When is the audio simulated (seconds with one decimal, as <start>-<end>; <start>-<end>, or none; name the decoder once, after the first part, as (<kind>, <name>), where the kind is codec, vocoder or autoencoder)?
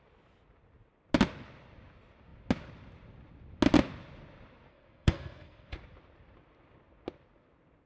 4.7-5.7 (codec, SNAC)